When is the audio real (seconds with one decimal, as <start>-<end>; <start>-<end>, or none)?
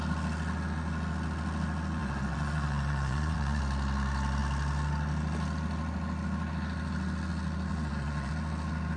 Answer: 0.0-2.0; 3.6-7.7; 8.3-9.0